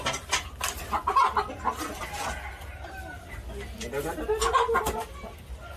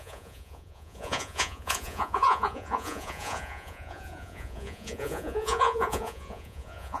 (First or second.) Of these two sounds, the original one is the first